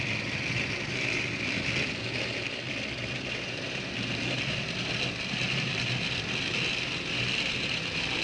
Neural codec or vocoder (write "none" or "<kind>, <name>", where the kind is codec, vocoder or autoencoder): none